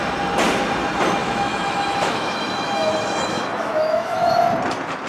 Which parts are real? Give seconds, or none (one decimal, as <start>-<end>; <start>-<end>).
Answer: 0.0-1.2; 4.3-5.1